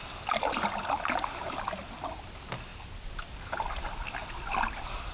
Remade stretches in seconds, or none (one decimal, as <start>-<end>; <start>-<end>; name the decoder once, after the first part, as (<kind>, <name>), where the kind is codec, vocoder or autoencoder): none